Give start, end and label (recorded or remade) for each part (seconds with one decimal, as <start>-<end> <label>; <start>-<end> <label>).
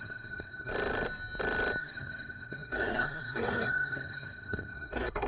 0.0-0.7 remade; 0.7-1.8 recorded; 1.8-5.3 remade